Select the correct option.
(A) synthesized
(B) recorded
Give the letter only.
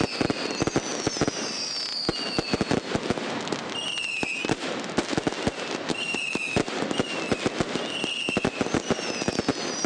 B